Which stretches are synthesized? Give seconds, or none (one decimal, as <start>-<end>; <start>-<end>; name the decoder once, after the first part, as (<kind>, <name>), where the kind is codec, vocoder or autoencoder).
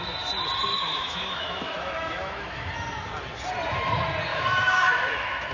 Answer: 0.7-2.7 (autoencoder, DAC-VAE); 4.3-5.5